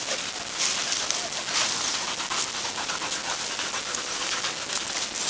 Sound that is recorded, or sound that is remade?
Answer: recorded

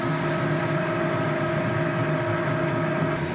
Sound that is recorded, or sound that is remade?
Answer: recorded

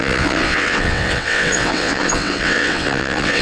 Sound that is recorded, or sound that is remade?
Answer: remade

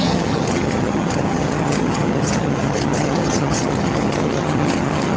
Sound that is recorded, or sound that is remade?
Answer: remade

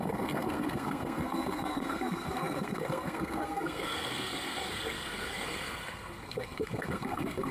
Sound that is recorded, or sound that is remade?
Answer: remade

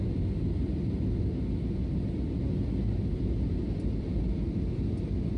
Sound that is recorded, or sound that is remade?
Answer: recorded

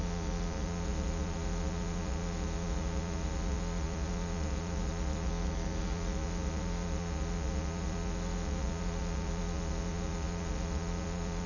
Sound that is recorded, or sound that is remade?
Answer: remade